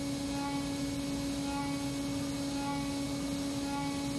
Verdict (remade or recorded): recorded